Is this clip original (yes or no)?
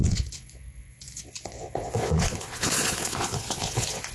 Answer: no